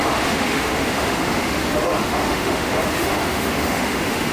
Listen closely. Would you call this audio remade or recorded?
remade